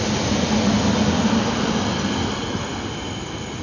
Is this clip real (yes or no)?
yes